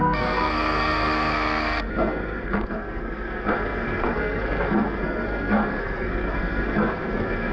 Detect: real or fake fake